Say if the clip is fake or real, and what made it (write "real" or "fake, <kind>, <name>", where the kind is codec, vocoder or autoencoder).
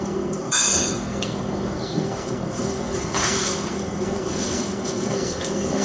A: fake, codec, SNAC